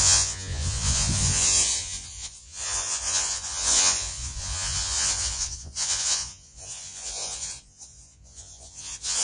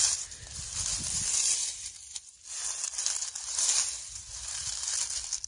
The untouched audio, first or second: second